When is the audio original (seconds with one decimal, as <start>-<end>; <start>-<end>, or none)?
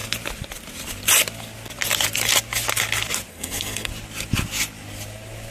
0.0-3.3; 3.9-5.5